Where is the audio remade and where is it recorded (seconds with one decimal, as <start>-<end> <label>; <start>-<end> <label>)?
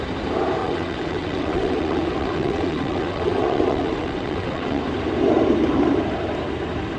0.0-0.6 recorded; 0.6-4.8 remade; 4.8-7.0 recorded